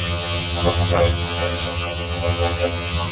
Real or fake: fake